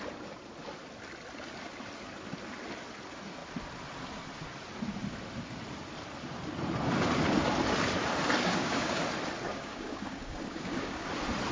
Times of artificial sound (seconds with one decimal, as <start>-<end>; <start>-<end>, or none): 8.4-9.0; 9.5-11.1